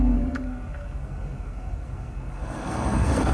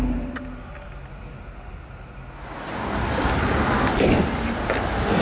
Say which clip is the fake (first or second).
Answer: first